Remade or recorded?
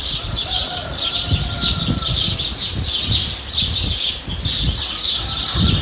recorded